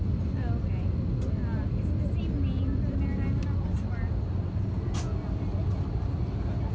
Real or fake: real